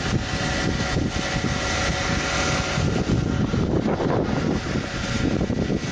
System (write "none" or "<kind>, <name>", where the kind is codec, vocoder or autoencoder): none